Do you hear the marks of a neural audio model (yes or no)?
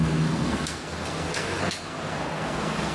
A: yes